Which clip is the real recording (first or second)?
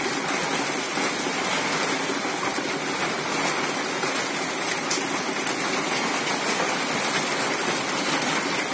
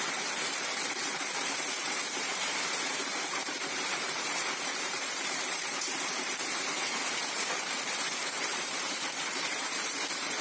first